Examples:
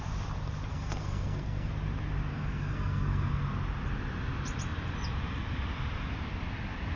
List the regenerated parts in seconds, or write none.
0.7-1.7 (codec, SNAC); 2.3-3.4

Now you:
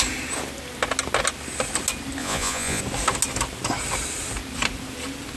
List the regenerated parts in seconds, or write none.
2.2-2.8 (vocoder, Vocos)

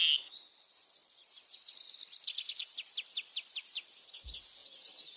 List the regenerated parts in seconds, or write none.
4.6-5.2 (vocoder, BigVGAN v2)